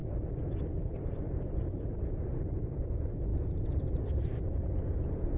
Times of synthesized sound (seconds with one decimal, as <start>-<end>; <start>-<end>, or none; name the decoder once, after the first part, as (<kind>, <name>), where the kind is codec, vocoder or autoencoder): 1.0-5.4 (vocoder, BigVGAN v2)